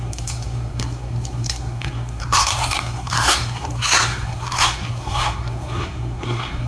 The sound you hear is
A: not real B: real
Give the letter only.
A